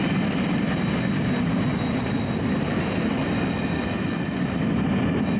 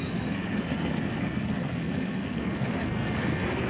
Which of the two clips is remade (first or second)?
second